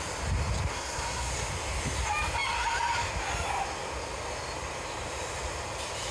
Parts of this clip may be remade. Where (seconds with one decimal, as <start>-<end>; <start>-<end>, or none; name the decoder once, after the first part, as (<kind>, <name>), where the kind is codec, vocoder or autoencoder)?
0.7-1.3 (codec, SNAC)

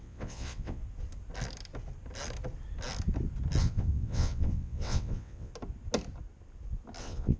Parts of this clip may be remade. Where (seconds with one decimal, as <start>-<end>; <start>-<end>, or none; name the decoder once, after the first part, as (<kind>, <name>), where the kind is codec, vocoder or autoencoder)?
0.0-0.8 (vocoder, WaveNeXt); 3.6-5.5; 7.0-7.4

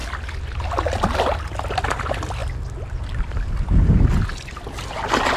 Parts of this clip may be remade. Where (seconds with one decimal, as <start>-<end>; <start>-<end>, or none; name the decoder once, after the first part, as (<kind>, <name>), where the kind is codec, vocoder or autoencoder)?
none

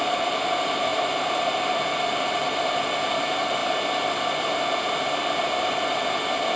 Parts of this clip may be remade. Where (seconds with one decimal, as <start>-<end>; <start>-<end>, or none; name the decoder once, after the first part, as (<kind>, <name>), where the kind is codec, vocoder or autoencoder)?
0.0-3.6 (vocoder, BigVGAN v2); 5.8-6.6

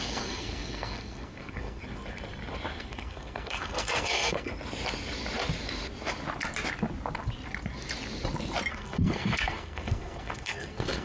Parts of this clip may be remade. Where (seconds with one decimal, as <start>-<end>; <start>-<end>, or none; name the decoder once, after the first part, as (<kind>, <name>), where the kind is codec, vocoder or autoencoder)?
0.0-1.8 (codec, SNAC); 2.7-4.5; 8.7-11.0

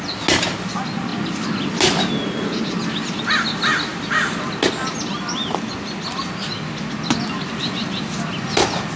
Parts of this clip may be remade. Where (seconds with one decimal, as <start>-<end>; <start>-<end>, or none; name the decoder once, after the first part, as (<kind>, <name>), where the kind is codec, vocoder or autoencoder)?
none

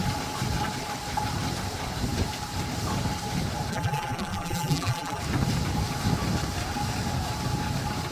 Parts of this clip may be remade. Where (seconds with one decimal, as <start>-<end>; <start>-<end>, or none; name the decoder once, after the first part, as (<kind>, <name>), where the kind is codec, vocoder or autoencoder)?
3.7-5.2 (vocoder, BigVGAN v2)